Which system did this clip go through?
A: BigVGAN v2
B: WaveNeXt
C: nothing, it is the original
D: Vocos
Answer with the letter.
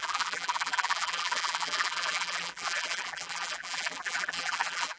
A